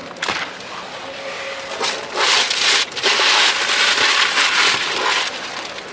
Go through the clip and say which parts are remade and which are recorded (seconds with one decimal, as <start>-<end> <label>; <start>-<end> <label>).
0.0-3.5 remade; 3.5-5.9 recorded